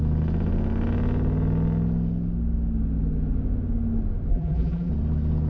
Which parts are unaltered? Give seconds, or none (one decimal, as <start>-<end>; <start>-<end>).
0.0-4.3; 4.9-5.5